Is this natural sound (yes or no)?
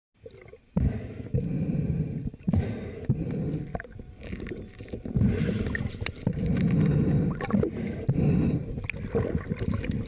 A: yes